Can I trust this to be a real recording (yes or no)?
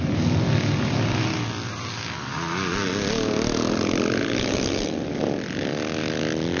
yes